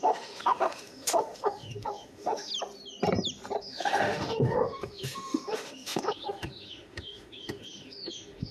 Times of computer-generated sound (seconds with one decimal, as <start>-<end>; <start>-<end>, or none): 0.0-2.5; 3.6-8.5